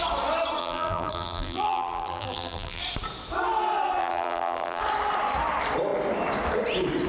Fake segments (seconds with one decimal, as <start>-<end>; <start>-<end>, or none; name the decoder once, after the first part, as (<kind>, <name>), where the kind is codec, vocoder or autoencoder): 0.6-2.8 (vocoder, BigVGAN v2); 4.0-4.8